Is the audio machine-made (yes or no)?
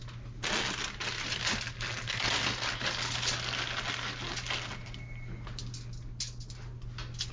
no